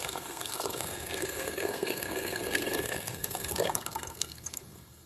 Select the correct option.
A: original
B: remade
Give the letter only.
B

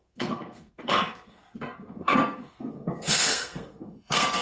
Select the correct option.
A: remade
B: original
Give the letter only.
A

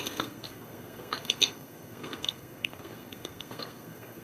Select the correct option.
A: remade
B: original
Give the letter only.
A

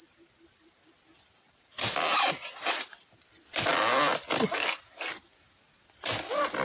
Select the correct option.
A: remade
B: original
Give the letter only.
B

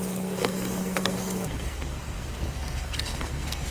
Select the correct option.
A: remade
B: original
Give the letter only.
A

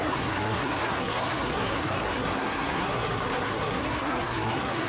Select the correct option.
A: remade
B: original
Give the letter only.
A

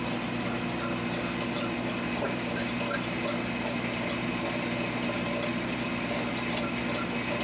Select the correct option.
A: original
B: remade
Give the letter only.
A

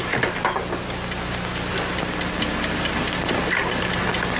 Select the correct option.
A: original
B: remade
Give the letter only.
A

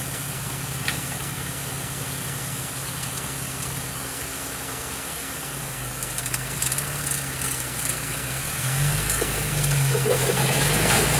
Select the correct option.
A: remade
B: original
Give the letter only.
A